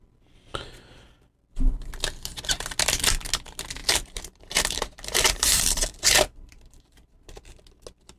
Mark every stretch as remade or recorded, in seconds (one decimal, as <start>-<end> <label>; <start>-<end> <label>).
0.0-3.8 recorded; 3.8-7.5 remade; 7.5-8.2 recorded